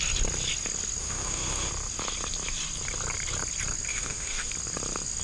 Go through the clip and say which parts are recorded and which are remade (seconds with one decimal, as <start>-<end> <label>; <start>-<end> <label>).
0.0-1.0 recorded; 1.0-1.7 remade; 1.7-3.9 recorded; 3.9-4.5 remade; 4.5-5.2 recorded